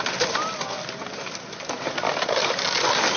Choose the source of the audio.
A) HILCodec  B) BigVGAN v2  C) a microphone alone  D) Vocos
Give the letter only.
C